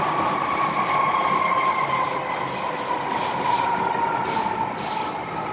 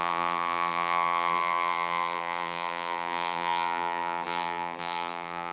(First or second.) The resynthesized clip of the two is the second